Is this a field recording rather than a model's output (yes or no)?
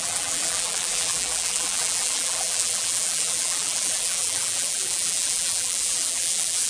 no